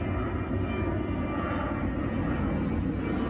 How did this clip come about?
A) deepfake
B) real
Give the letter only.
B